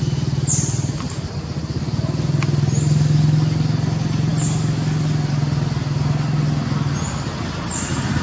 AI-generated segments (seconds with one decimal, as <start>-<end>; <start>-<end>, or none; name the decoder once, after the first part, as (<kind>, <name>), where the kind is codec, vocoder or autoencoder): none